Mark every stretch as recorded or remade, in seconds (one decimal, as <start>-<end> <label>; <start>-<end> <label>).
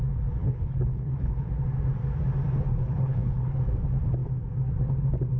0.0-0.4 recorded; 0.4-1.5 remade; 1.5-2.7 recorded; 2.7-3.6 remade; 3.6-5.4 recorded